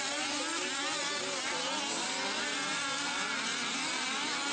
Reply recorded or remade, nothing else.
recorded